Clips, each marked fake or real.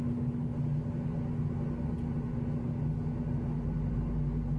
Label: real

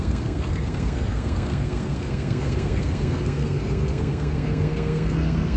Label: fake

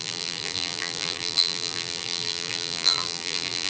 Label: fake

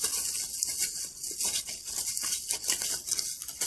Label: real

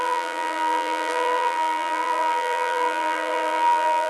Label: fake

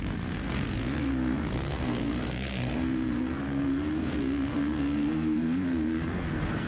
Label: fake